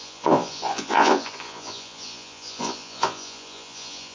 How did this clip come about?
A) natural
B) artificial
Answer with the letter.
B